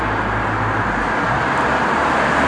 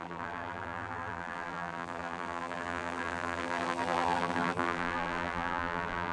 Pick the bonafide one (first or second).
first